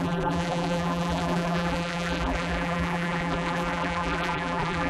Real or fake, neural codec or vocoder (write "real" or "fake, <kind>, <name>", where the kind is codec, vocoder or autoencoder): fake, vocoder, BigVGAN v2